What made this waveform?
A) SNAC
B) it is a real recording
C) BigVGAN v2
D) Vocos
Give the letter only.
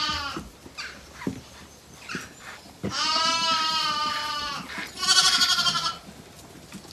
B